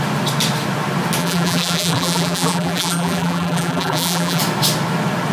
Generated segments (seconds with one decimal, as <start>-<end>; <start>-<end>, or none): 1.2-4.4